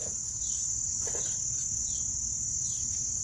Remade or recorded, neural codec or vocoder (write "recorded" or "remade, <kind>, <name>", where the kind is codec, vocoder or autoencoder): recorded